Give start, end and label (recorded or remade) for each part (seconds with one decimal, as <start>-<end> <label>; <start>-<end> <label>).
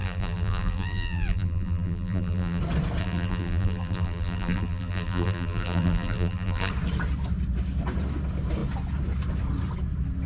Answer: 0.0-2.6 remade; 2.6-3.0 recorded; 3.0-6.7 remade; 6.7-10.3 recorded